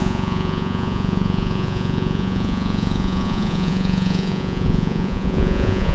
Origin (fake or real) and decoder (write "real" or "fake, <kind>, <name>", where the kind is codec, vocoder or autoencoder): fake, vocoder, Vocos